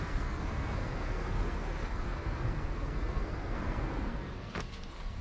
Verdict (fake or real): fake